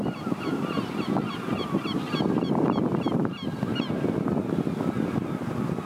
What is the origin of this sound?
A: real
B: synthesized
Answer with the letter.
A